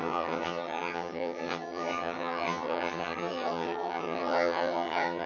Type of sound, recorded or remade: remade